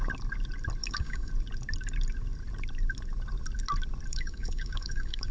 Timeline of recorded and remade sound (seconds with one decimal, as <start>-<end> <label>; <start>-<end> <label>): 0.0-0.8 recorded; 0.8-1.3 remade; 1.3-4.1 recorded; 4.1-5.3 remade